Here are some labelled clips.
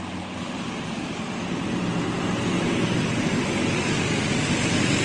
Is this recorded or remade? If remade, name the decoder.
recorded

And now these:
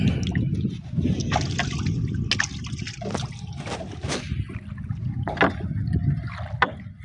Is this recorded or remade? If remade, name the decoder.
recorded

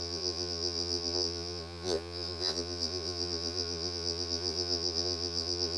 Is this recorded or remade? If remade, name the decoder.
remade, vocoder, Vocos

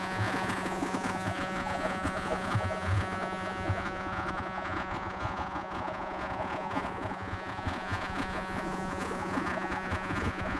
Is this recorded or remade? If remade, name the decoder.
remade, vocoder, Vocos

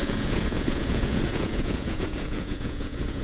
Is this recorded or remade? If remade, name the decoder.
remade, vocoder, Vocos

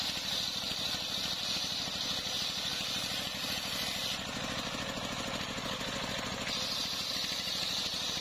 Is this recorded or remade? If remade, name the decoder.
recorded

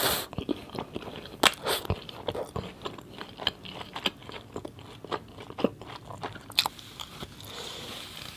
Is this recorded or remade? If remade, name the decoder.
recorded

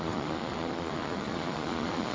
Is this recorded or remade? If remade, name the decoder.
remade, vocoder, Vocos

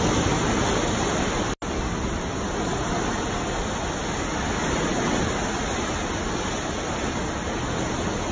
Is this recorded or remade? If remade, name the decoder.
recorded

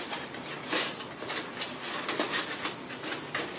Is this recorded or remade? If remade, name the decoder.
recorded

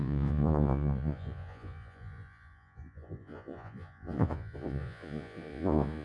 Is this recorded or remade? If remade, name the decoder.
remade, vocoder, Vocos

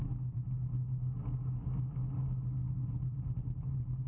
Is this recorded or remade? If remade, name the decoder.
recorded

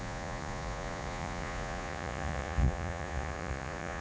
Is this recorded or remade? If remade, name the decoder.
remade, vocoder, Vocos